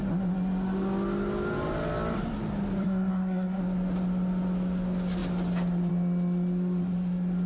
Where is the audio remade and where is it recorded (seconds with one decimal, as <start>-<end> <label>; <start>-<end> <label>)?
0.0-2.8 recorded; 2.8-3.6 remade; 3.6-7.5 recorded